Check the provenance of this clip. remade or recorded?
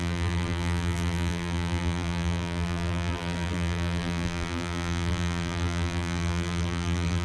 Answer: remade